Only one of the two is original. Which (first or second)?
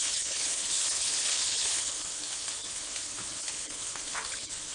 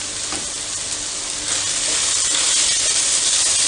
second